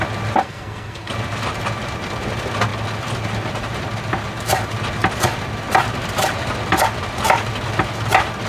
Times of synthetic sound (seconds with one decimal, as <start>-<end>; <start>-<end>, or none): 0.4-1.1